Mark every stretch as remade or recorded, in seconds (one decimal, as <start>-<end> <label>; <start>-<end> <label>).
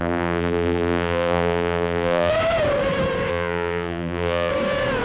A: 0.0-2.3 remade; 2.3-3.3 recorded; 3.3-4.5 remade; 4.5-5.0 recorded